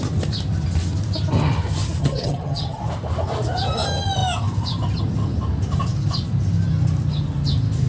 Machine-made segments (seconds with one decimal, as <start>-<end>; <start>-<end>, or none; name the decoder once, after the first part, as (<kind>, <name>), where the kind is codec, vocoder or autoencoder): 2.0-2.8 (vocoder, HiFi-GAN)